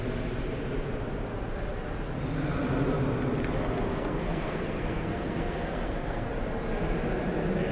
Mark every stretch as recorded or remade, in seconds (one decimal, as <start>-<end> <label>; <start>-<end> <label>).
0.0-3.9 recorded; 3.9-6.3 remade; 6.3-7.7 recorded